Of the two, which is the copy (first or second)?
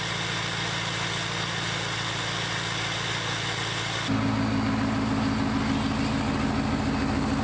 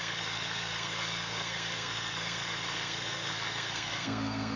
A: second